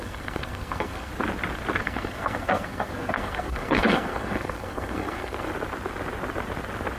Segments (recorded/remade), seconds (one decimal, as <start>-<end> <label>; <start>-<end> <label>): 0.0-1.1 remade; 1.1-1.8 recorded; 1.8-5.5 remade; 5.5-7.0 recorded

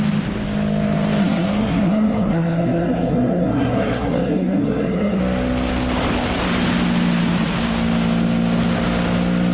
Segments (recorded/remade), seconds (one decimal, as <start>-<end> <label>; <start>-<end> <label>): 0.0-1.2 recorded; 1.2-5.2 remade; 5.2-9.5 recorded

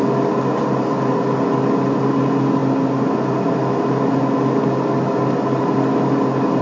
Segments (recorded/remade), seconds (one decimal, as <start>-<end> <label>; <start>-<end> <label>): 0.0-6.6 recorded

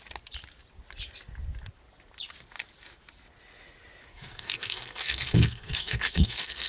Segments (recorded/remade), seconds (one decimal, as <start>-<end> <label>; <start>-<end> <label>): 0.0-4.1 recorded; 4.1-6.7 remade